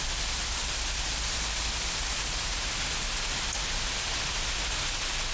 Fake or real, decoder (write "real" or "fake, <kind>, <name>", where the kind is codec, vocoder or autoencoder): real